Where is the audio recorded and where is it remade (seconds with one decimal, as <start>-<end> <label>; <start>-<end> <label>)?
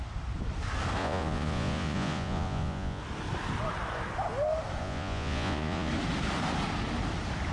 0.0-1.0 recorded; 1.0-3.0 remade; 3.0-4.8 recorded; 4.8-5.9 remade; 5.9-7.5 recorded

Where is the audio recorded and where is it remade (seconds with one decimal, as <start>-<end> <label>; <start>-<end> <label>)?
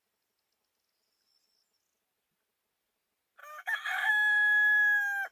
0.0-3.4 recorded; 3.4-4.1 remade; 4.1-5.3 recorded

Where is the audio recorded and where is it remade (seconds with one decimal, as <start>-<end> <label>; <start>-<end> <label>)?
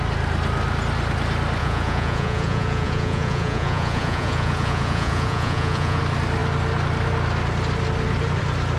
0.0-1.6 recorded; 1.6-6.0 remade; 6.0-8.8 recorded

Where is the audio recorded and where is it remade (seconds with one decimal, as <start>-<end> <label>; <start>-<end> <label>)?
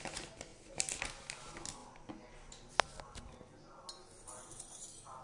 0.0-5.2 recorded